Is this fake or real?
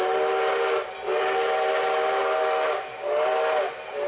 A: real